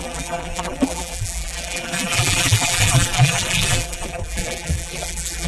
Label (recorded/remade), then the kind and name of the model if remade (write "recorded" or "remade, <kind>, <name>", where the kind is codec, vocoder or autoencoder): remade, vocoder, BigVGAN v2